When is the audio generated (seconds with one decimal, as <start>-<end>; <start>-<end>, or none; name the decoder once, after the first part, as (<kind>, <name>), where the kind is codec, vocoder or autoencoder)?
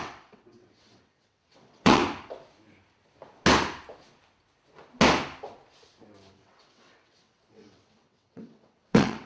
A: 0.0-2.0 (vocoder, WaveNeXt); 6.3-9.3